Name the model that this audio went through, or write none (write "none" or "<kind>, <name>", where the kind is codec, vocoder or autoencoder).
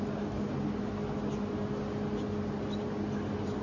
none